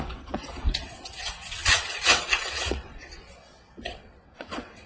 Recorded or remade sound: remade